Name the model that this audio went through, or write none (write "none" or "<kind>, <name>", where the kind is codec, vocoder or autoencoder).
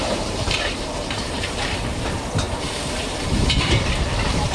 vocoder, BigVGAN v2